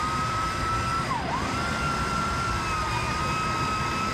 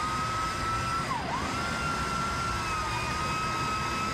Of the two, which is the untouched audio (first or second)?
second